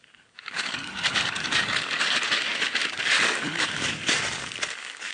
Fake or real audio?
fake